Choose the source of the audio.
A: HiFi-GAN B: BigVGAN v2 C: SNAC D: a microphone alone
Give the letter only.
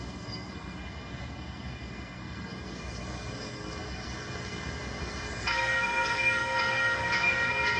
C